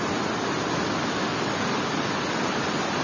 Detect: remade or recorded recorded